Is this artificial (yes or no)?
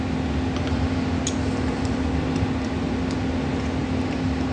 no